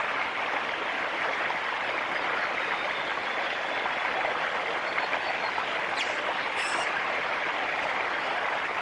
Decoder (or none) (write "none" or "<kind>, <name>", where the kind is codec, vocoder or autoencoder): none